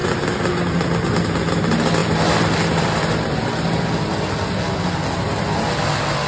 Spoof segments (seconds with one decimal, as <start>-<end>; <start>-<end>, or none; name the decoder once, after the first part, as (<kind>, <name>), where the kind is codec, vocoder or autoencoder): 2.0-4.3 (vocoder, BigVGAN v2)